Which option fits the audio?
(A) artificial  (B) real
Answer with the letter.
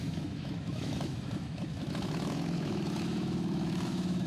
A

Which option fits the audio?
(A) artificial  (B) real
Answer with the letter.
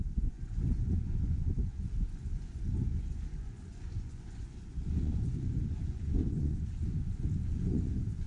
A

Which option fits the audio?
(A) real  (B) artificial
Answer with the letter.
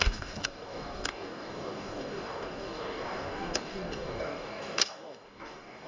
B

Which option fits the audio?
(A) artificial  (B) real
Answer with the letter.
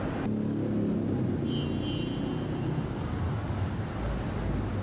B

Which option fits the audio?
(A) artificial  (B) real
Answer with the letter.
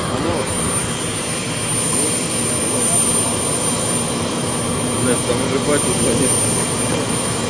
B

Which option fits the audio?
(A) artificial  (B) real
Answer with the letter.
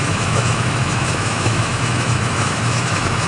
A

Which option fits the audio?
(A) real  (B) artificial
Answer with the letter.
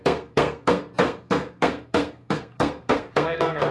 B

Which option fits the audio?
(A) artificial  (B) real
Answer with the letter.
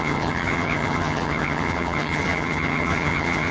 A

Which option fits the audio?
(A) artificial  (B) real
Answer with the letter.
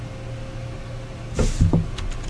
B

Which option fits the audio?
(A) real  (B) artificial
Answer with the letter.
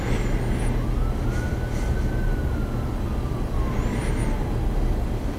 A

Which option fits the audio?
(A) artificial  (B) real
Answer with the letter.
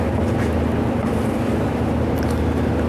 B